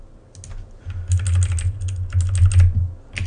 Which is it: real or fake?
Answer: real